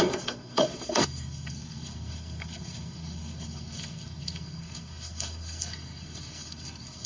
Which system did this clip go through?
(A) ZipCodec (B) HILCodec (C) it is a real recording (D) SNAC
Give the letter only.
D